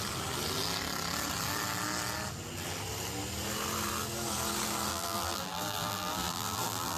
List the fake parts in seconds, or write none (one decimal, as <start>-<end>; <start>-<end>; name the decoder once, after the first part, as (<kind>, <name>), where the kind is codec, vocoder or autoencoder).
4.9-7.0 (vocoder, BigVGAN v2)